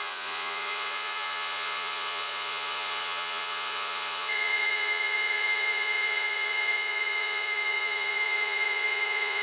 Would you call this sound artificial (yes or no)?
yes